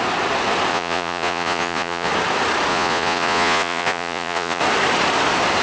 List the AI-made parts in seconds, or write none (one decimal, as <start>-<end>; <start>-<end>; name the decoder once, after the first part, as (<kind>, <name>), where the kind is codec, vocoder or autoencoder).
0.7-2.1 (vocoder, Vocos); 2.7-4.6